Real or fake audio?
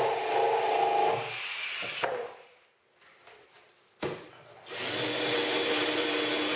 real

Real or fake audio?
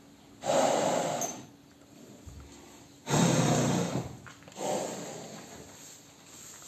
real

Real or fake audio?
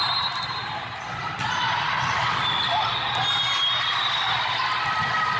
real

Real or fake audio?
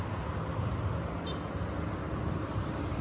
real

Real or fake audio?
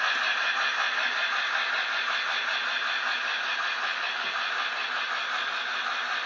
real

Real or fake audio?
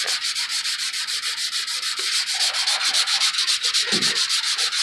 fake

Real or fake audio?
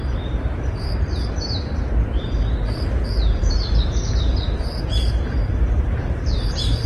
fake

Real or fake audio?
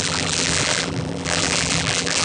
fake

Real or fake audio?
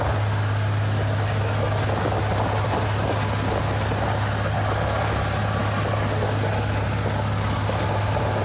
real